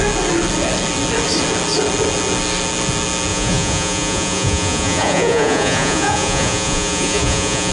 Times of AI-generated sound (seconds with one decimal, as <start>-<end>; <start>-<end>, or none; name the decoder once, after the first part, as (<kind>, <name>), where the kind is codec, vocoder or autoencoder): 3.3-7.7 (vocoder, Vocos)